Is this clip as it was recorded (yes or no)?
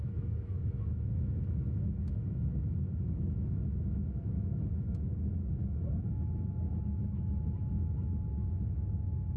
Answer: no